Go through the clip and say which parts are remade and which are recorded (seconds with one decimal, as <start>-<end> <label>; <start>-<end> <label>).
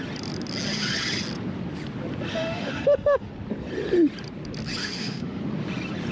0.0-2.3 recorded; 2.3-3.3 remade; 3.3-4.8 recorded; 4.8-5.4 remade; 5.4-6.1 recorded